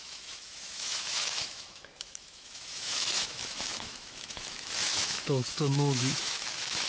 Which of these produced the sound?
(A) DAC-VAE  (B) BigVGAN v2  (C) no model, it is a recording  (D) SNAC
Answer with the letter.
A